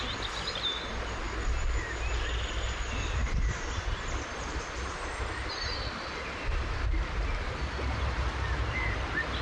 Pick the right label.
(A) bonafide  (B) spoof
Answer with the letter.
A